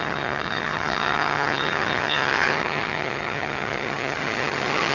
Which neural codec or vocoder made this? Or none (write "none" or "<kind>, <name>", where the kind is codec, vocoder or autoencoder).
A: vocoder, HiFi-GAN